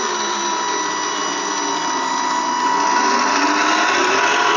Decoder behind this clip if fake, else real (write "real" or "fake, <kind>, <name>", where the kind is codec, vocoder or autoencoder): real